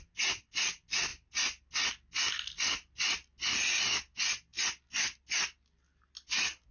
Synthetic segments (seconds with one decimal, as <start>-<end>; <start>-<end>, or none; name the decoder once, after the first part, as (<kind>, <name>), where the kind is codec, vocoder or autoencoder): none